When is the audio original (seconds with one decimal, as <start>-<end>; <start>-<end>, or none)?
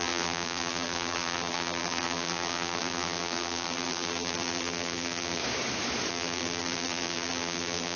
5.4-6.1